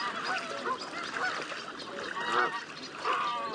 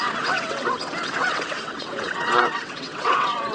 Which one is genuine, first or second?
first